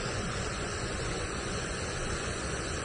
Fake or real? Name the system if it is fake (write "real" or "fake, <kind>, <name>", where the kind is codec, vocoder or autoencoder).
fake, vocoder, Vocos